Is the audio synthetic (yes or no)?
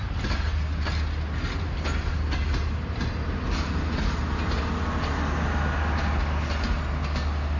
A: no